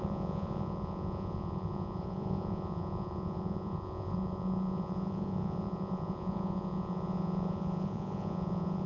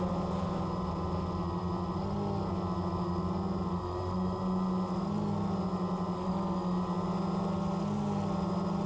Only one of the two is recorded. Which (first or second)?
second